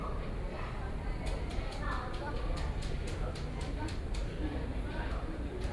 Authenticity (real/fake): fake